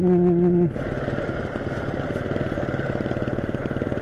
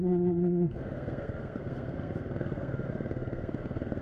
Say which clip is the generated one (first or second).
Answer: second